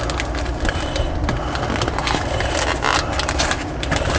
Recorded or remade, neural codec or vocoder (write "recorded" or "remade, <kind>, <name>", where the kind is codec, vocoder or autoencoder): recorded